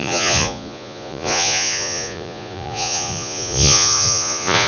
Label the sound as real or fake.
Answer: fake